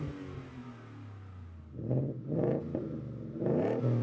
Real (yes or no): yes